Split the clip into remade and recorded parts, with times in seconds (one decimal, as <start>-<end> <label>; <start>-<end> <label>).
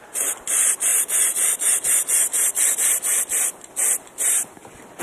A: 0.0-5.0 recorded